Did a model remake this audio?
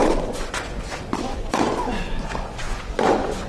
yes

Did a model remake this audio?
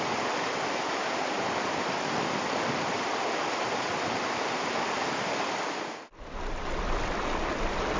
no